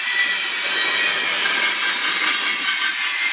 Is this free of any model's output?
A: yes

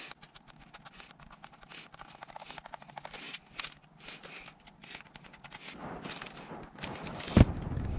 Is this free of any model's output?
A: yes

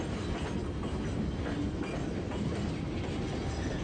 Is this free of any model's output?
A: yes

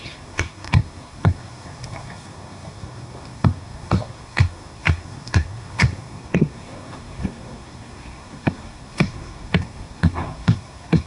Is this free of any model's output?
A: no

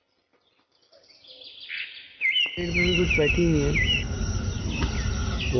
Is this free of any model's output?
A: yes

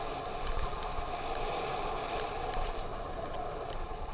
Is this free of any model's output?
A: yes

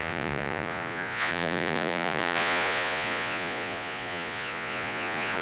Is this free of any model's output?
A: no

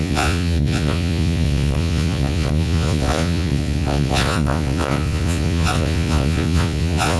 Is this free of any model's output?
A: no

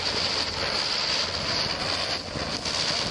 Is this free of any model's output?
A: yes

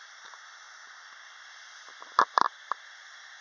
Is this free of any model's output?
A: yes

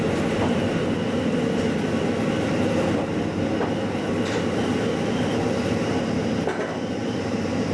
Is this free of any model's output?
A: yes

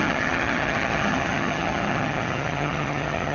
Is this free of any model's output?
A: no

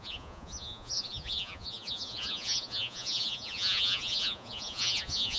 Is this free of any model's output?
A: no